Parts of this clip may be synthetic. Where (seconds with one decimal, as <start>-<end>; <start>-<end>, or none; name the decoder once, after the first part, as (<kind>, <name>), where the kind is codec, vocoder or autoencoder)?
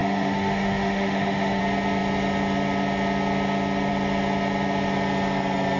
0.0-1.6 (autoencoder, DAC-VAE)